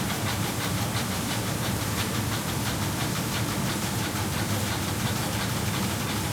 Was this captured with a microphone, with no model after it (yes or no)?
yes